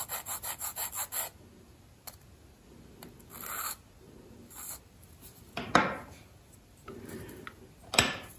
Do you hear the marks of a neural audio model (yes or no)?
no